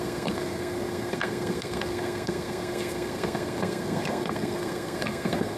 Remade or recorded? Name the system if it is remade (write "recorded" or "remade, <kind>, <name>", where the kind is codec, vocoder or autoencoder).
remade, codec, SNAC